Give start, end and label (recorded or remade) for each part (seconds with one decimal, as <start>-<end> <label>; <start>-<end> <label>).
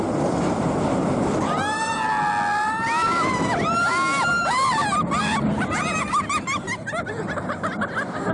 0.0-8.3 recorded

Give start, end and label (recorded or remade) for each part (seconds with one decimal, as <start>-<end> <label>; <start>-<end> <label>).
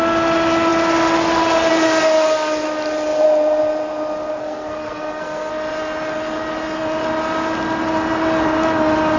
0.0-4.4 recorded; 4.4-5.5 remade; 5.5-9.2 recorded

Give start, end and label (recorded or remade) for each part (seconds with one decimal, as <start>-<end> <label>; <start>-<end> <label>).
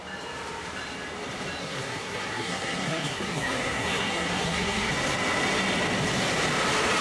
0.0-1.6 recorded; 1.6-4.9 remade; 4.9-7.0 recorded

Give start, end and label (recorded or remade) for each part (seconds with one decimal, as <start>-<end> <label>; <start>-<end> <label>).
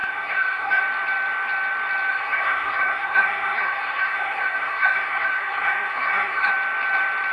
0.0-0.8 remade; 0.8-2.1 recorded; 2.1-6.5 remade; 6.5-7.3 recorded